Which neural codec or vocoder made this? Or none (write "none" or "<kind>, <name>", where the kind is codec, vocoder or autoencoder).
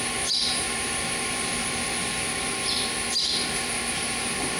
vocoder, BigVGAN v2